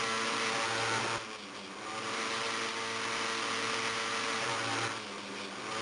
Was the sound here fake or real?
real